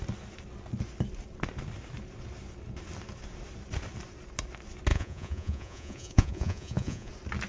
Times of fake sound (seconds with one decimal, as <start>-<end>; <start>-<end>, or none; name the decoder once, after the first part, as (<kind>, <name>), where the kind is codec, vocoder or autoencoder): 4.9-7.1 (vocoder, Vocos)